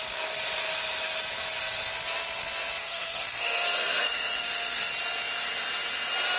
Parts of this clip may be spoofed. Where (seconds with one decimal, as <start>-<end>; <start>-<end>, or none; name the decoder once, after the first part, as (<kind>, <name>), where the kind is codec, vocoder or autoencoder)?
2.8-4.9 (codec, SNAC)